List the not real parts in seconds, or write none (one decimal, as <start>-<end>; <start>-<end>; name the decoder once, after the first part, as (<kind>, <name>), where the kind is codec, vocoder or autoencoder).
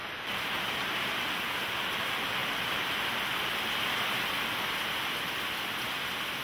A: none